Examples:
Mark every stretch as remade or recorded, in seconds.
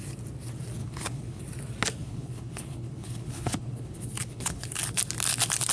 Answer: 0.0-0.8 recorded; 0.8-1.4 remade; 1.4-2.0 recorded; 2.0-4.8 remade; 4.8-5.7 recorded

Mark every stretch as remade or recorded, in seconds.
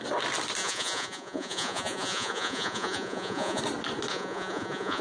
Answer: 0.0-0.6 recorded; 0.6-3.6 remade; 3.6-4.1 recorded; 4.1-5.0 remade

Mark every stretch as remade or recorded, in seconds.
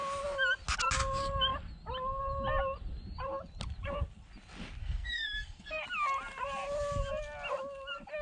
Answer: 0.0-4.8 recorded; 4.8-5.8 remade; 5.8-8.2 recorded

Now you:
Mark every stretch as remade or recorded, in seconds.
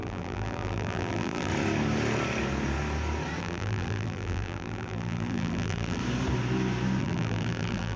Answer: 0.0-1.5 remade; 1.5-3.4 recorded; 3.4-6.0 remade; 6.0-7.0 recorded; 7.0-8.0 remade